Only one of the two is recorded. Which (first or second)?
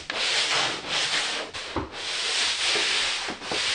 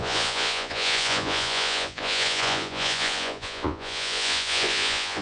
first